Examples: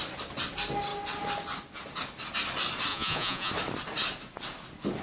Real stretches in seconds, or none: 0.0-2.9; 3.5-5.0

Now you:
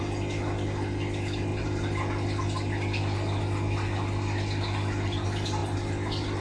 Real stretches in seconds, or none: 0.0-1.5; 2.0-6.4

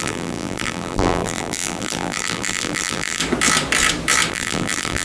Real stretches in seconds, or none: 3.2-4.3

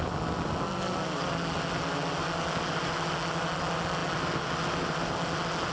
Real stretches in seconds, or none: 0.0-5.7